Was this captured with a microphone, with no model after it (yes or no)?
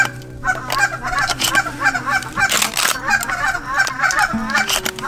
yes